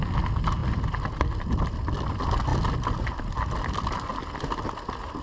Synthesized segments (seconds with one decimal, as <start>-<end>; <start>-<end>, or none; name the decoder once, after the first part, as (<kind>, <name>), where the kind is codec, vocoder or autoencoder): 0.6-2.1 (vocoder, BigVGAN v2)

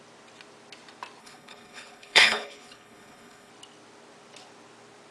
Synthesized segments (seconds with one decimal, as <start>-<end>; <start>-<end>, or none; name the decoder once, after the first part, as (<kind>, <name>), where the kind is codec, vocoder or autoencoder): 1.2-3.5 (codec, HILCodec)

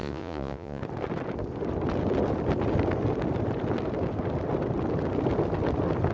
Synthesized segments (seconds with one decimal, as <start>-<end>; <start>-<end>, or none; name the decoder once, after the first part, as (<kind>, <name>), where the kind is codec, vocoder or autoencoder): 0.0-0.8 (vocoder, Vocos)

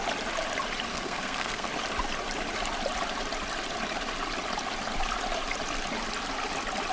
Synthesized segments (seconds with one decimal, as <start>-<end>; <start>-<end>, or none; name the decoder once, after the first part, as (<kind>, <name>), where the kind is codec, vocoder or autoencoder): 0.9-1.7 (codec, SNAC)